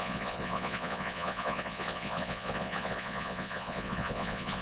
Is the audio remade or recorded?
remade